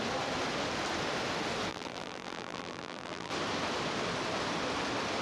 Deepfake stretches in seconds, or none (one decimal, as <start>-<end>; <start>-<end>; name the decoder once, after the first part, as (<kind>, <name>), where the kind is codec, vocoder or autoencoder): 1.7-3.3 (vocoder, BigVGAN v2)